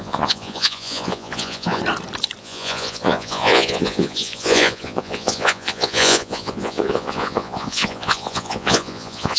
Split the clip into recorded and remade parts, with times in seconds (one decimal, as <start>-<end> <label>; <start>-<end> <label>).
0.0-1.8 remade; 1.8-2.4 recorded; 2.4-9.4 remade